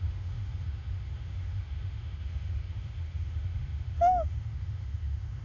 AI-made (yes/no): yes